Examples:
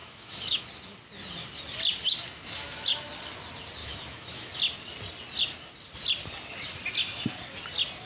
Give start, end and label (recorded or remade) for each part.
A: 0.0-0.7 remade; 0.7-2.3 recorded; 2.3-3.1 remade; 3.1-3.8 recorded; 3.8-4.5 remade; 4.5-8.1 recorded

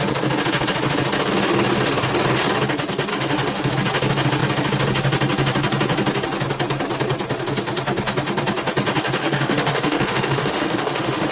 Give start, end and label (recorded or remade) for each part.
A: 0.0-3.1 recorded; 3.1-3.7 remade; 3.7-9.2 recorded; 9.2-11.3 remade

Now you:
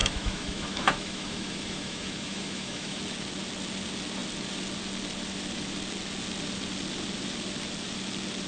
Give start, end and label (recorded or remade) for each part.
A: 0.0-3.0 remade; 3.0-8.5 recorded

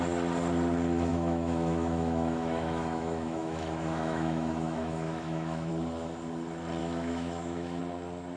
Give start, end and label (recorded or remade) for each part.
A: 0.0-1.1 recorded; 1.1-5.7 remade; 5.7-6.8 recorded; 6.8-7.8 remade; 7.8-8.4 recorded

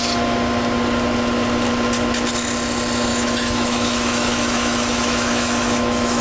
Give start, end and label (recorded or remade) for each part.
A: 0.0-3.1 recorded; 3.1-6.2 remade

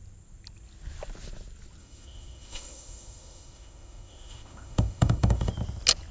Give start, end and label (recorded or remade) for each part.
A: 0.0-1.8 recorded; 1.8-5.5 remade; 5.5-6.1 recorded

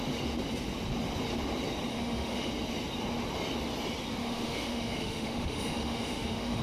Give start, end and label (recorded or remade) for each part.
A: 0.0-1.9 recorded; 1.9-2.5 remade; 2.5-4.2 recorded; 4.2-6.6 remade